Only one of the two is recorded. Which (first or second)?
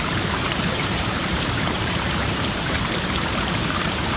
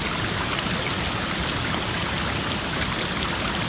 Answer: second